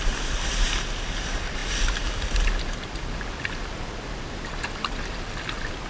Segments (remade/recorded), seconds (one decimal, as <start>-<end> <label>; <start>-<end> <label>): 0.0-5.9 recorded